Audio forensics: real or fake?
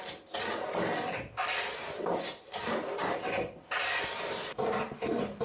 real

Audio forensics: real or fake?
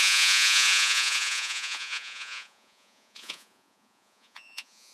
fake